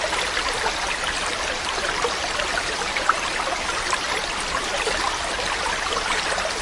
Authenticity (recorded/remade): recorded